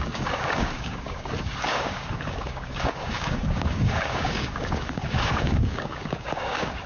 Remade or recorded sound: remade